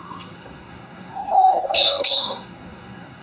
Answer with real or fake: fake